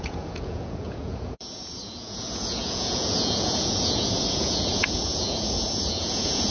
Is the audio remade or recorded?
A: remade